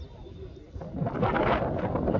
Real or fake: real